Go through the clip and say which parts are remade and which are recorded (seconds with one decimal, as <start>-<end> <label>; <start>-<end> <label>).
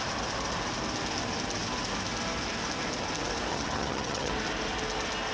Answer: 0.0-3.5 recorded; 3.5-4.3 remade; 4.3-5.3 recorded